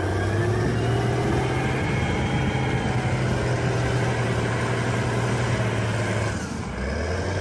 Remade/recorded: recorded